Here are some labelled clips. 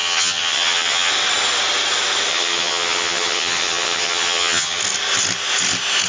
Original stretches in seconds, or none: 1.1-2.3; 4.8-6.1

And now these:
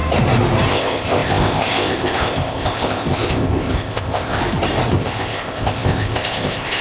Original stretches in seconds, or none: 0.0-0.7; 4.4-4.9

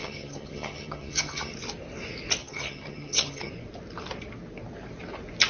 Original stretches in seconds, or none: 1.5-2.4; 3.5-5.5

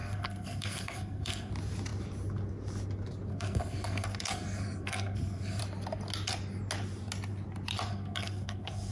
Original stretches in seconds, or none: 1.5-3.3; 5.6-7.9

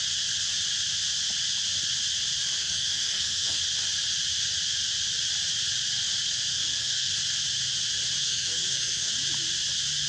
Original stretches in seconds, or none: 0.0-2.6; 3.6-6.5; 7.1-8.2; 9.1-10.1